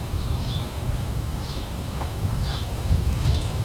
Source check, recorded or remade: remade